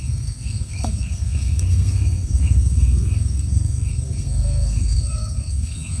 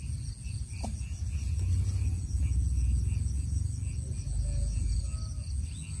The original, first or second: second